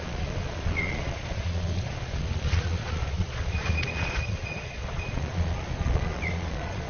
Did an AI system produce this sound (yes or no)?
yes